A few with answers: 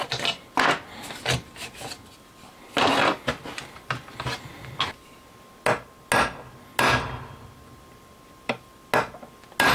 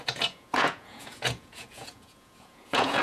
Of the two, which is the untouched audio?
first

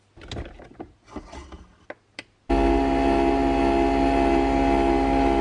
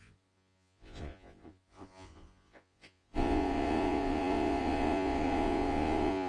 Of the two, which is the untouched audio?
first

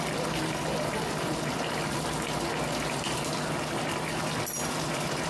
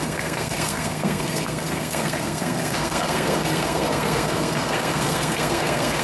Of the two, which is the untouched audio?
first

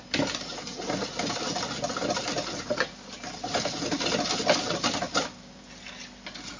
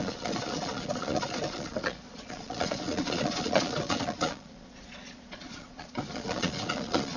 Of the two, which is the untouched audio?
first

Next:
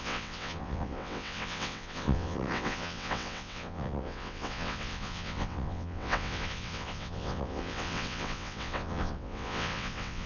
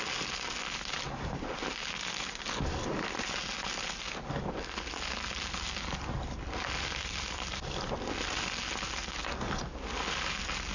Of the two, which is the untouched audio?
second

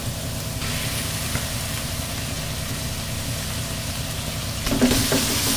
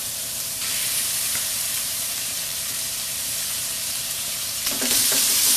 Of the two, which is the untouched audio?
first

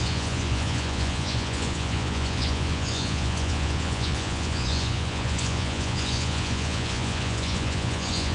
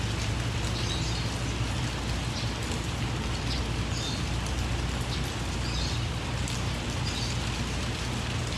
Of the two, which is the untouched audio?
second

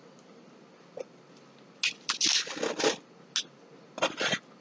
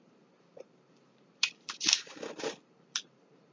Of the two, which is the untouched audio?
first